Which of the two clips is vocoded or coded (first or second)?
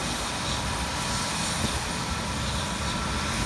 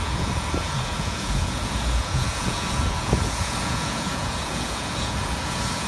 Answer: second